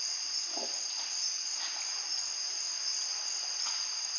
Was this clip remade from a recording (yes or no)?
no